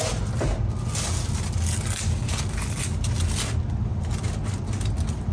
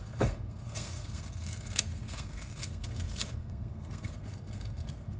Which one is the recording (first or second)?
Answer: first